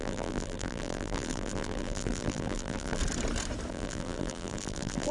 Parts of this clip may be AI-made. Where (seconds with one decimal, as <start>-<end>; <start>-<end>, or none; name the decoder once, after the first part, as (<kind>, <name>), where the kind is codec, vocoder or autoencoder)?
0.0-3.0 (vocoder, BigVGAN v2); 3.7-5.1